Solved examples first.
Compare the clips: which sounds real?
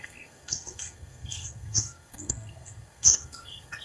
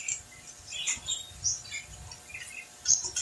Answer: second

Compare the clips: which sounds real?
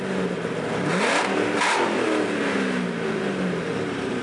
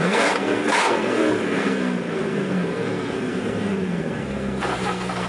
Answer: first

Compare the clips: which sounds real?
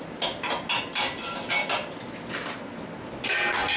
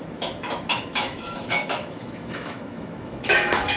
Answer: first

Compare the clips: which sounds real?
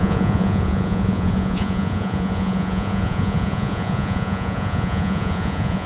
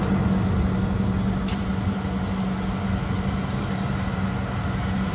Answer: second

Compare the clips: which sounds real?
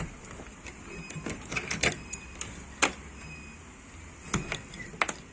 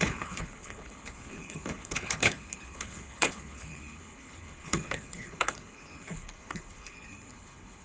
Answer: first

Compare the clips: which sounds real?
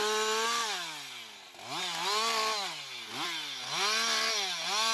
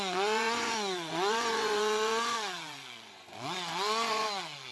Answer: first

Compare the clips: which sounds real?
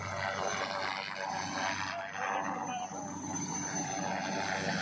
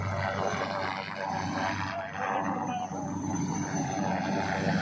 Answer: first